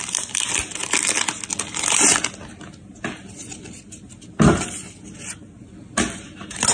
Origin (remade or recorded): recorded